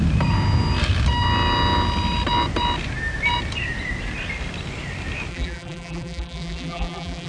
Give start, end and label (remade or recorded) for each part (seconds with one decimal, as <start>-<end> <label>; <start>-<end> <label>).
0.0-5.3 recorded; 5.3-7.3 remade

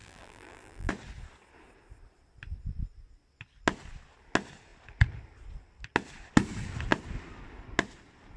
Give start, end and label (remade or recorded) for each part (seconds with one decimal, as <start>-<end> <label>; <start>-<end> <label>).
0.0-0.9 remade; 0.9-8.4 recorded

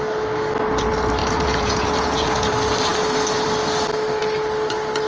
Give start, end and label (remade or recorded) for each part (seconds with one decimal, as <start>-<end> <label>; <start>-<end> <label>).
0.0-1.2 recorded; 1.2-2.5 remade; 2.5-5.1 recorded

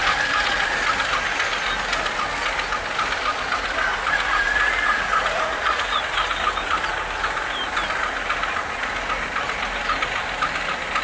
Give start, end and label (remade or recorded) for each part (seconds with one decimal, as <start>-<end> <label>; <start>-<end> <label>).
0.0-3.9 recorded; 3.9-6.0 remade; 6.0-11.0 recorded